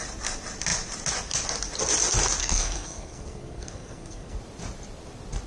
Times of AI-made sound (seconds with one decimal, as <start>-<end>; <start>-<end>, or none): 2.4-4.4